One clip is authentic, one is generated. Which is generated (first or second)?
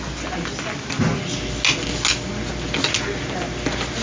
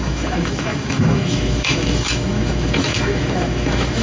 second